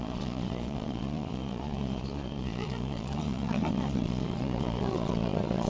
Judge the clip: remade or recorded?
remade